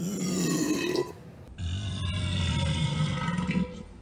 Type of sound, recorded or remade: recorded